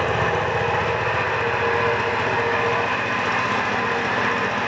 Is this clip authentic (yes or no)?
yes